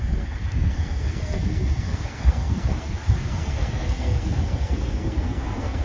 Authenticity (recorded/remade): remade